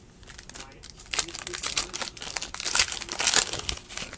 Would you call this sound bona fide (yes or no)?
yes